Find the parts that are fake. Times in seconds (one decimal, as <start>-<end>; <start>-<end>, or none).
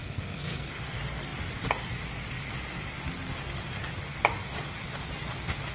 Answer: 0.0-0.7